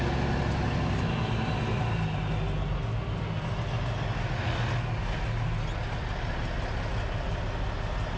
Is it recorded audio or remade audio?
recorded